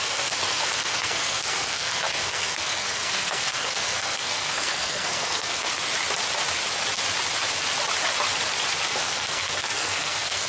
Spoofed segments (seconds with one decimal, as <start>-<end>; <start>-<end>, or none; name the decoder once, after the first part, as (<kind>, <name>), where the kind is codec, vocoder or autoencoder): 0.0-5.7 (codec, SNAC); 8.9-10.5

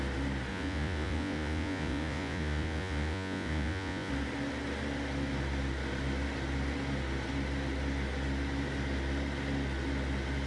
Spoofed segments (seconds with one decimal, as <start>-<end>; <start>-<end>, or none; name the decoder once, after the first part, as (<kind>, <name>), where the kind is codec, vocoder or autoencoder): 0.5-4.1 (vocoder, Vocos)

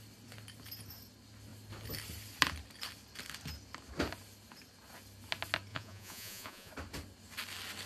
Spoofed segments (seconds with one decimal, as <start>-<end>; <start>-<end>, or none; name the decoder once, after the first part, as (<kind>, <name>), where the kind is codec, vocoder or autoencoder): 5.7-6.7 (vocoder, Vocos)